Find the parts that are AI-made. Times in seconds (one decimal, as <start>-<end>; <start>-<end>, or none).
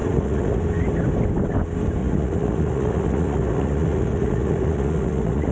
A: 0.0-0.6; 2.0-5.5